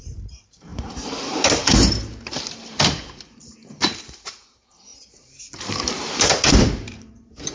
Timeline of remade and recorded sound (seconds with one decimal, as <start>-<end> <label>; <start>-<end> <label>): 0.0-7.5 remade